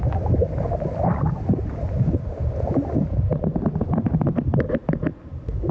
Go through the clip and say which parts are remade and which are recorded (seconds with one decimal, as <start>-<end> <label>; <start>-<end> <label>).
0.0-5.7 recorded